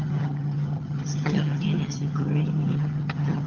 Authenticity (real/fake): fake